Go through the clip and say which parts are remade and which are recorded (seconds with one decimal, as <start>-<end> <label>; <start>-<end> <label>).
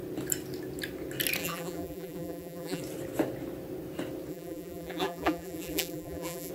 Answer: 0.0-1.4 recorded; 1.4-2.8 remade; 2.8-4.3 recorded; 4.3-6.5 remade